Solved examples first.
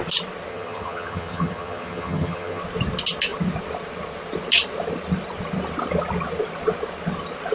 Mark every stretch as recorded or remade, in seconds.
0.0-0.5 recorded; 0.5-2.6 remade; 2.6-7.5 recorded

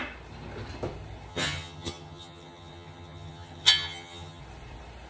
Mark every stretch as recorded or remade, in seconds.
0.0-1.3 recorded; 1.3-4.4 remade; 4.4-5.1 recorded